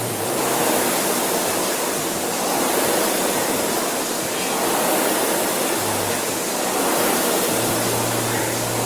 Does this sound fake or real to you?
real